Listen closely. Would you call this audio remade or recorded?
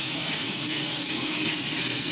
remade